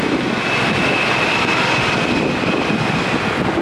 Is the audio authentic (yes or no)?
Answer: yes